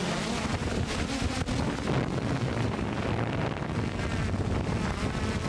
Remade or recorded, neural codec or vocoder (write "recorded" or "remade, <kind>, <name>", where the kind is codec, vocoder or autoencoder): recorded